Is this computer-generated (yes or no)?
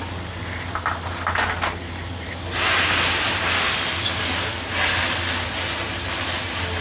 no